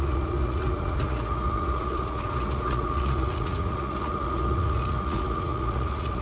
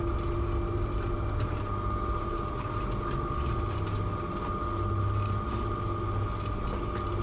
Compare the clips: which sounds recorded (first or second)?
second